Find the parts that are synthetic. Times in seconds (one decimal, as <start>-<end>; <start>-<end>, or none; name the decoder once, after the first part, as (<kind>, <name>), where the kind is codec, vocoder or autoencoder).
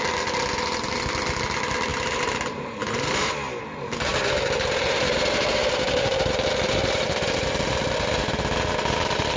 1.9-3.3 (vocoder, BigVGAN v2); 4.1-8.3